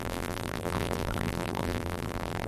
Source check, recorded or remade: remade